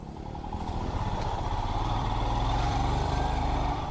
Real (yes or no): no